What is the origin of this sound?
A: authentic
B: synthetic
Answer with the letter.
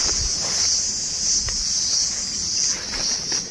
A